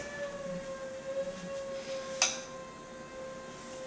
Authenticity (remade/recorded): recorded